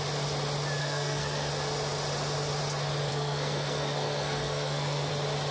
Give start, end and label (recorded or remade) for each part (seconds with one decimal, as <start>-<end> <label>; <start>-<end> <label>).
0.0-0.8 recorded; 0.8-1.5 remade; 1.5-3.1 recorded; 3.1-5.1 remade; 5.1-5.5 recorded